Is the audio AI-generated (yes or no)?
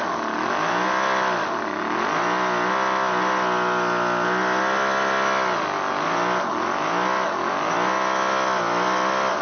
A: no